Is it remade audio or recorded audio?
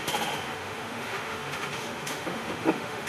remade